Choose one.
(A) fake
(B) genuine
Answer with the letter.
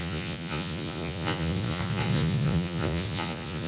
A